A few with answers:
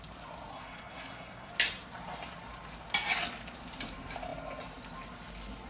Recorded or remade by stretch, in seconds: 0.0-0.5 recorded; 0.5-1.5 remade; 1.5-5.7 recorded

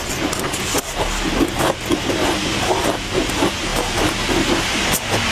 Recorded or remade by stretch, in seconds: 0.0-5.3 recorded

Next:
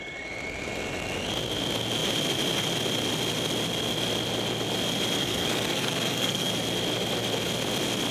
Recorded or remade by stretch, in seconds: 0.0-5.2 recorded; 5.2-6.5 remade; 6.5-8.1 recorded